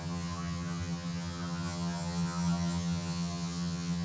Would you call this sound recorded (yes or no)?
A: no